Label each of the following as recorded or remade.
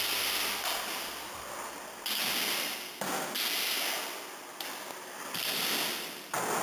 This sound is recorded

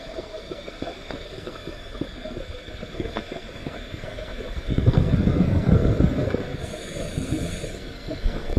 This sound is remade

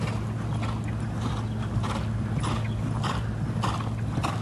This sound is recorded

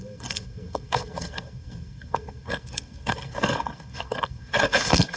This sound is remade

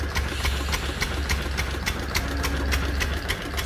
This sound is recorded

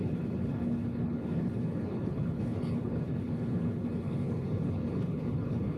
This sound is remade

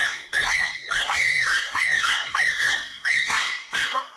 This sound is remade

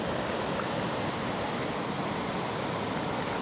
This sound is recorded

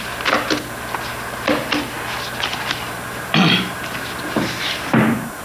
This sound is recorded